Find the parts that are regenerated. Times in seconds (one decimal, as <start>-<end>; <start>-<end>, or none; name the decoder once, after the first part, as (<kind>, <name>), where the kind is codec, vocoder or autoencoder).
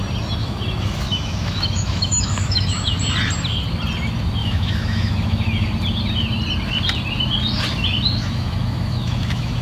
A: 0.4-3.0 (autoencoder, DAC-VAE); 4.4-5.7; 8.2-9.6